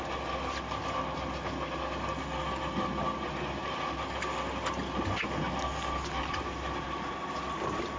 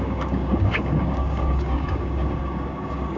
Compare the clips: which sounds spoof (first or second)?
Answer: second